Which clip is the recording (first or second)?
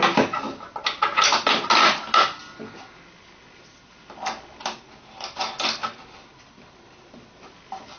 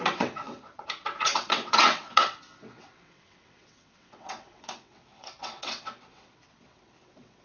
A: first